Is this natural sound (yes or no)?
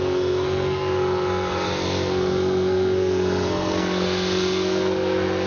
no